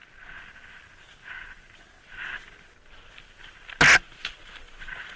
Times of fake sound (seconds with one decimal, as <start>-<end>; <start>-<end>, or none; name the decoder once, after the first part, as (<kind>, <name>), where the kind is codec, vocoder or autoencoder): none